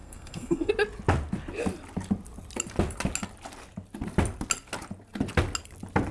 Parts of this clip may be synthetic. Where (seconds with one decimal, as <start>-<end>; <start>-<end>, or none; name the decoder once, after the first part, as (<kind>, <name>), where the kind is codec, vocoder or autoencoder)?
0.0-0.7 (codec, SNAC)